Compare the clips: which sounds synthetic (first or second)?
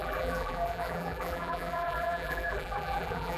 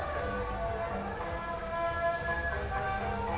first